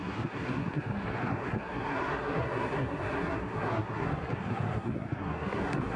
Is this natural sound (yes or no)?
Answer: no